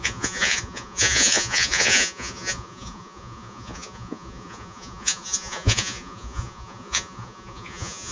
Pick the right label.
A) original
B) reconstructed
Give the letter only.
B